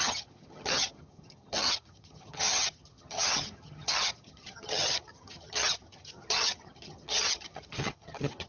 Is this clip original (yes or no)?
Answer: no